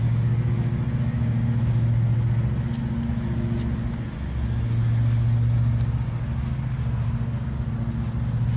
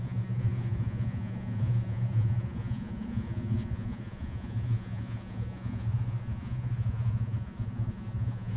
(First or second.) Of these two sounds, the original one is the first